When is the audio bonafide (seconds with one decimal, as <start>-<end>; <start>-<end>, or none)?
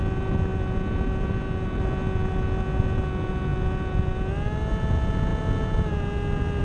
0.0-6.6